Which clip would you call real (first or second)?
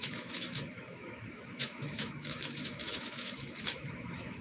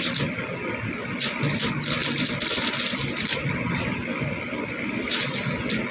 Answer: second